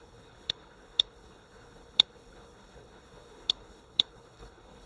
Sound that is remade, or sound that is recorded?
remade